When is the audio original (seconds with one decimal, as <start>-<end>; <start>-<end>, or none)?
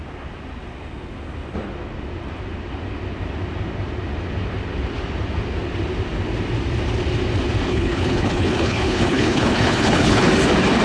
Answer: 0.0-7.7; 10.3-10.8